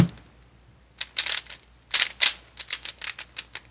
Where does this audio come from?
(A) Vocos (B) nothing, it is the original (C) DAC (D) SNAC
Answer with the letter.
B